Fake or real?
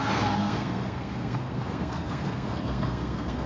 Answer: fake